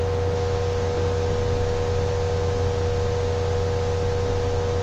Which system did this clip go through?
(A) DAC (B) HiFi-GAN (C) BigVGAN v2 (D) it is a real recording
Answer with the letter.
D